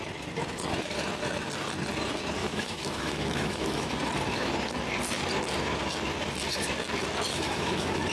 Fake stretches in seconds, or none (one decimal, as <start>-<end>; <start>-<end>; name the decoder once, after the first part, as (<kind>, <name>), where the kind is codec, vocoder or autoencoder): 2.4-3.9 (autoencoder, DAC-VAE); 7.3-8.1